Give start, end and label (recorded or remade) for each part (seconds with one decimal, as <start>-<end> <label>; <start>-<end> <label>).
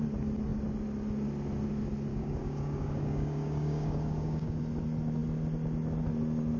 0.0-2.1 recorded; 2.1-4.6 remade; 4.6-6.6 recorded